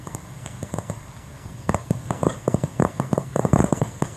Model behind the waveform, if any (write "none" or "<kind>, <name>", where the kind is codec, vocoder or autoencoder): codec, SNAC